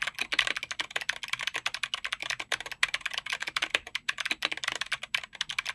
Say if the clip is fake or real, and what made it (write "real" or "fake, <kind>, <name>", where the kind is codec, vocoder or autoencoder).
real